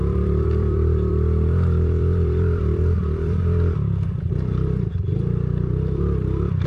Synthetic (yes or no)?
yes